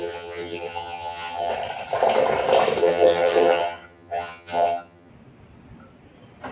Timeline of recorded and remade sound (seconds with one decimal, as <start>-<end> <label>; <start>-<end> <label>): 0.0-1.5 remade; 1.5-2.8 recorded; 2.8-5.1 remade; 5.1-6.5 recorded